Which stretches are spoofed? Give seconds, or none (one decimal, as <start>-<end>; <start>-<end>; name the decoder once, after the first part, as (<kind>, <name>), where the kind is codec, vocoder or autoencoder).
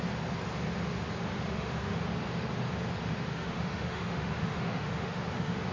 1.3-2.0 (autoencoder, DAC-VAE); 3.1-5.7